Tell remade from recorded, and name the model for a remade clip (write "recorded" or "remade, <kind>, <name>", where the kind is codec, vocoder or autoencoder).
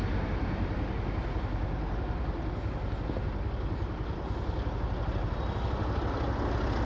recorded